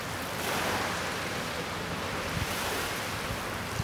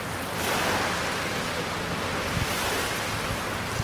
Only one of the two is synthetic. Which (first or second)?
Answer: first